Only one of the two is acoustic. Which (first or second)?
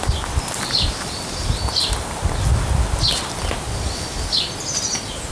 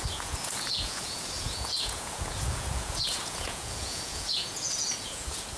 first